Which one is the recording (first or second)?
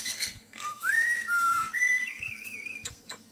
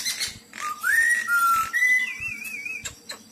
second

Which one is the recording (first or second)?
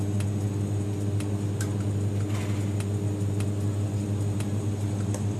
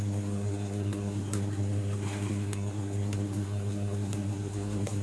first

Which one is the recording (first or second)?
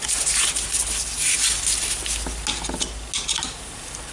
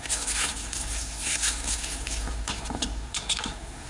first